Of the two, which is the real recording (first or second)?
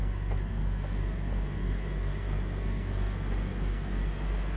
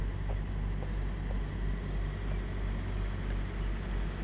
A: second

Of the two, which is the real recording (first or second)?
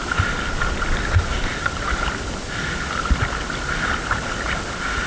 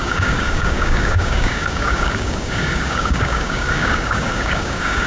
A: first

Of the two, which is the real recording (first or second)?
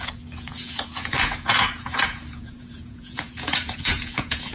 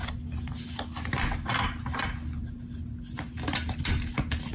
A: second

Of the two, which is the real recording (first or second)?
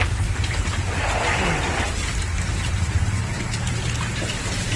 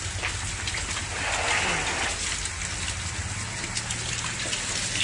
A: second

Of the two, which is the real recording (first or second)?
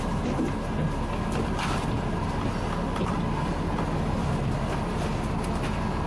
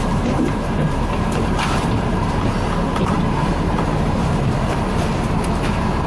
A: first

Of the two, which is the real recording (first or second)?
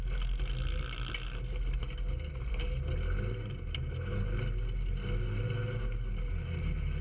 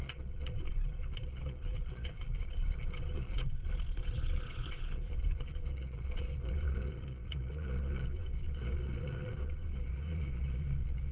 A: first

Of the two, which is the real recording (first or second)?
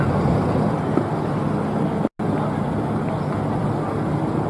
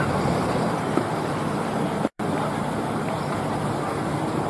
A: first